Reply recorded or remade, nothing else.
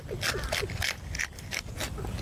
recorded